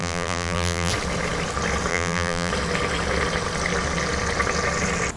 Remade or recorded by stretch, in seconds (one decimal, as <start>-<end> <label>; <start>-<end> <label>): 0.0-0.9 remade; 0.9-1.9 recorded; 1.9-2.5 remade; 2.5-5.2 recorded